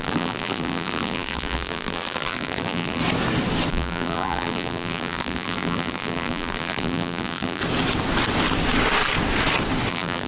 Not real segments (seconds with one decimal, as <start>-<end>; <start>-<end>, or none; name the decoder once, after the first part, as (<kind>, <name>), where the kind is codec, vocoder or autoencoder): 0.0-3.0 (vocoder, BigVGAN v2); 3.7-7.6; 9.9-10.3